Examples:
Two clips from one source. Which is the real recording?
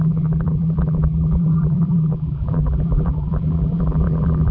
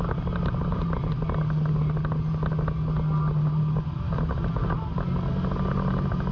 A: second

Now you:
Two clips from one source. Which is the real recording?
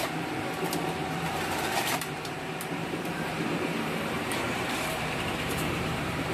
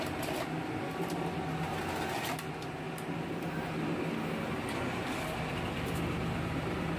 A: second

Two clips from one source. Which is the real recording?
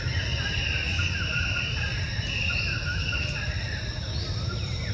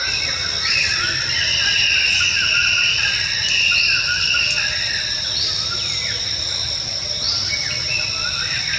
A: second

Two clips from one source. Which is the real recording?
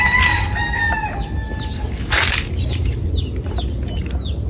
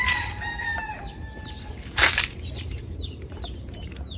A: first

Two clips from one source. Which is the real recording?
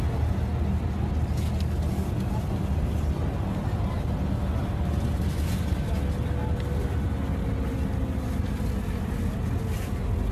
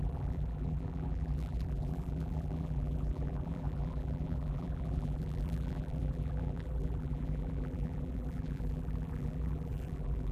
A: first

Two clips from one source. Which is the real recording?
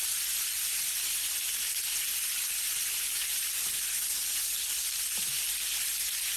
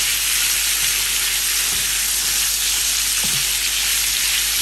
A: second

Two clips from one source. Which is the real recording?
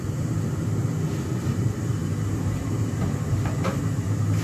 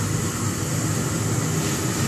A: second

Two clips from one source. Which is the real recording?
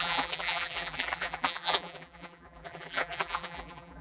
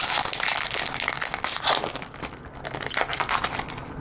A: second